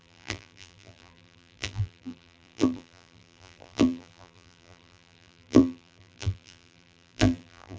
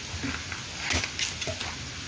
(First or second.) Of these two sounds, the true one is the second